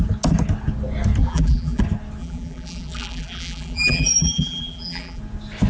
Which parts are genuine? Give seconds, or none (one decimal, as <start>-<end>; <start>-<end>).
0.0-1.2; 1.8-2.2; 5.2-5.7